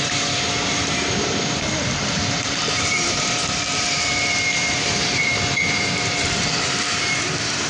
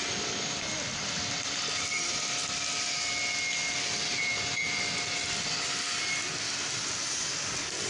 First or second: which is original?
second